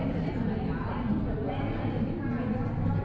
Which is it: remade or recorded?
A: recorded